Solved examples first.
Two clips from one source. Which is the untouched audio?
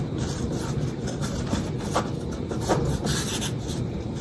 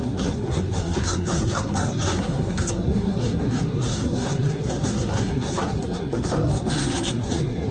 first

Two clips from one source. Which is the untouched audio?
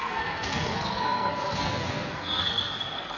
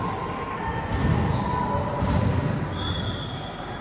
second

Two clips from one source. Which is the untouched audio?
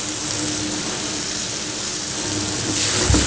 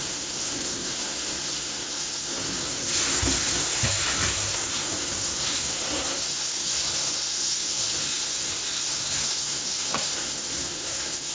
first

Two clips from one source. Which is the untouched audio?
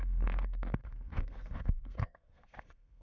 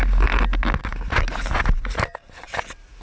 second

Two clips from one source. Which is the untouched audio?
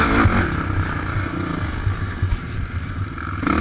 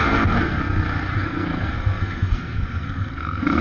first